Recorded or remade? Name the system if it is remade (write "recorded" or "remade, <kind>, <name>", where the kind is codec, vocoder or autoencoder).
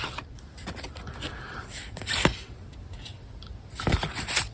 recorded